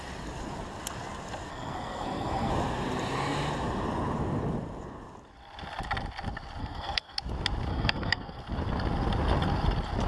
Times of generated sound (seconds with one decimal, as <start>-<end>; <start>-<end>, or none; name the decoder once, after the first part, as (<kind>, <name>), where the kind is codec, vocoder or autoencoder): 1.5-2.5 (codec, SNAC); 6.6-7.2; 7.7-8.4